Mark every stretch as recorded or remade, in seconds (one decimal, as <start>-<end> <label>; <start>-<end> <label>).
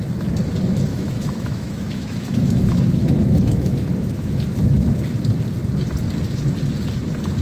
0.0-0.9 recorded; 0.9-5.0 remade; 5.0-7.4 recorded